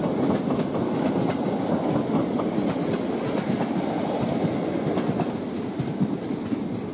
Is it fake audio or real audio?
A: real